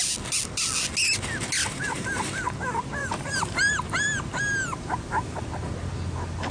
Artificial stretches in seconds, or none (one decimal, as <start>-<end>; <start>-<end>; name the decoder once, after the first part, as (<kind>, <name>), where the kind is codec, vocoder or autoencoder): 1.6-5.4 (vocoder, BigVGAN v2)